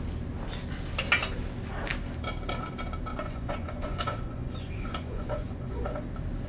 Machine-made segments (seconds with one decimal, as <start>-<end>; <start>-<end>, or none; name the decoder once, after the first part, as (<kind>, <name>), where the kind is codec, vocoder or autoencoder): 3.1-6.0 (vocoder, Vocos)